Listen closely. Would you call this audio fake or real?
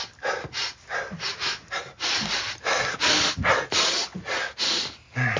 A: real